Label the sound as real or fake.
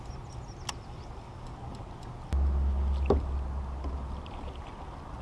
real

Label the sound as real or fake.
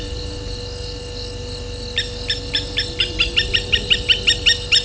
real